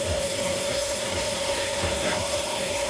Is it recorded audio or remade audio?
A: remade